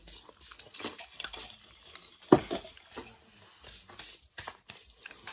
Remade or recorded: recorded